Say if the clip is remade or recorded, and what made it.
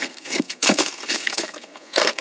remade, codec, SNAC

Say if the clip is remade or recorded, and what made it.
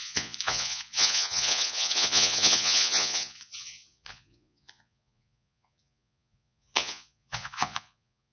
remade, vocoder, Vocos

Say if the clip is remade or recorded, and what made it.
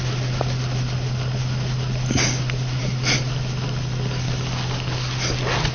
recorded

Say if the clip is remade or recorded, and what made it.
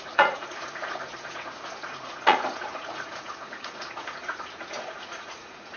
remade, vocoder, Vocos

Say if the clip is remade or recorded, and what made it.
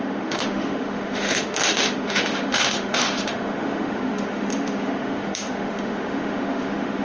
remade, autoencoder, DAC-VAE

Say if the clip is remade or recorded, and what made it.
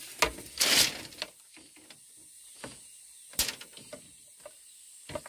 recorded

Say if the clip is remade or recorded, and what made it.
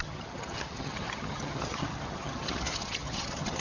remade, vocoder, HiFi-GAN